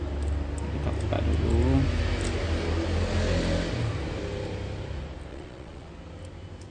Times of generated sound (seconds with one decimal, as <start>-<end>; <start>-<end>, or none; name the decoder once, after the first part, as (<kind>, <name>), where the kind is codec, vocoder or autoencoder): 5.3-5.9 (vocoder, Vocos)